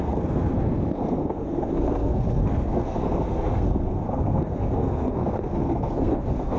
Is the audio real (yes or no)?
no